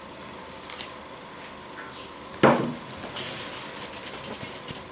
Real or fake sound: real